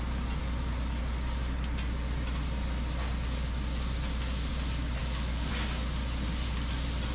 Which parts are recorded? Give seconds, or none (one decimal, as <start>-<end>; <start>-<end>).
0.0-5.0; 5.5-7.1